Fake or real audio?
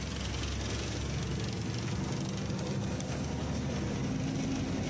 real